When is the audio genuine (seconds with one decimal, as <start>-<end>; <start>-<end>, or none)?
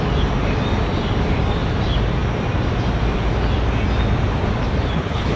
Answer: 0.0-4.9